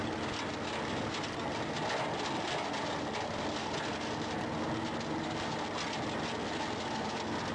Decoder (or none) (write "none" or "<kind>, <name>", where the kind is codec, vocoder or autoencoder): none